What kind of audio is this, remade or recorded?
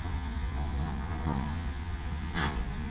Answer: remade